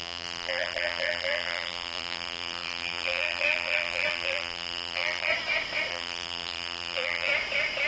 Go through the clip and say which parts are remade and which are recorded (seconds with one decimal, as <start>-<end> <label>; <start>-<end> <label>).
0.0-5.3 remade; 5.3-5.9 recorded; 5.9-7.3 remade; 7.3-7.9 recorded